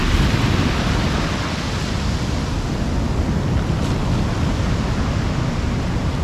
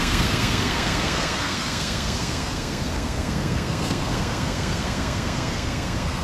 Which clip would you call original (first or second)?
first